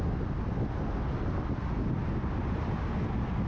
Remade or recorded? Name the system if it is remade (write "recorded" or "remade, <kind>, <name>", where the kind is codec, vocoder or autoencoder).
recorded